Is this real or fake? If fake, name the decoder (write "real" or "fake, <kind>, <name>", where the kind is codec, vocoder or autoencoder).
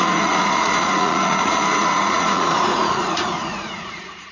fake, vocoder, Vocos